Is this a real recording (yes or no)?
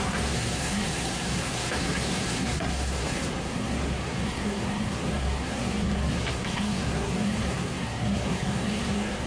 no